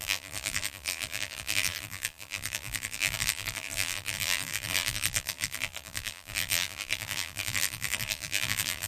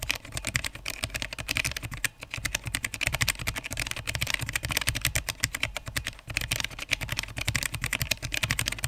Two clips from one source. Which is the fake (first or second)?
first